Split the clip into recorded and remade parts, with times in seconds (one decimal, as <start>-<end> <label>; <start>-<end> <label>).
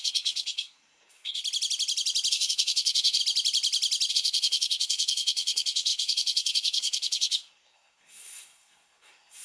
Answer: 0.0-1.4 remade; 1.4-2.3 recorded; 2.3-3.2 remade; 3.2-4.1 recorded; 4.1-9.4 remade